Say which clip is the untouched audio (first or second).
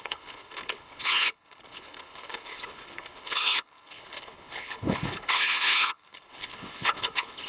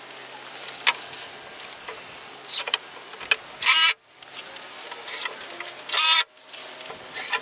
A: second